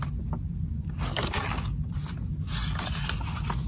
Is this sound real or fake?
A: real